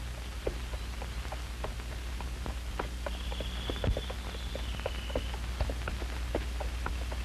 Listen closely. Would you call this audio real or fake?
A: real